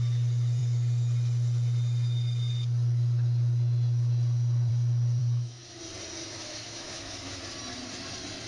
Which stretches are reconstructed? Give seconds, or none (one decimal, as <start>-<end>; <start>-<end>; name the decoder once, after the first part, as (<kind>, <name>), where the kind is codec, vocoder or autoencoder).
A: 5.2-5.8 (autoencoder, DAC-VAE); 6.2-7.4